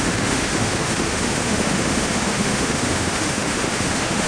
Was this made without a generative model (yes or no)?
no